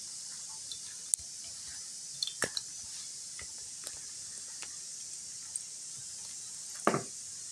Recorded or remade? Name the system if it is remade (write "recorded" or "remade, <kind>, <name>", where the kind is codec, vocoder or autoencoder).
recorded